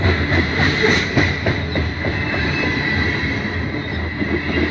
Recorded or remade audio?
recorded